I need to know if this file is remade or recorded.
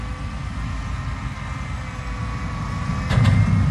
recorded